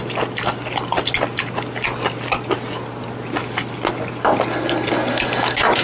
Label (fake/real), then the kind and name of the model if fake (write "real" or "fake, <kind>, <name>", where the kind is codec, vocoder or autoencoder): real